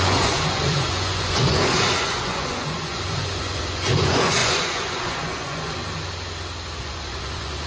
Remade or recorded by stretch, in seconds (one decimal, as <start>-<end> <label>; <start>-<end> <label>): 0.0-5.8 remade; 5.8-6.8 recorded; 6.8-7.7 remade